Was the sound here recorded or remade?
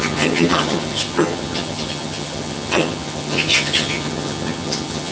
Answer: remade